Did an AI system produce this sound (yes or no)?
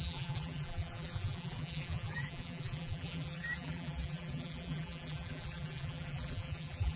yes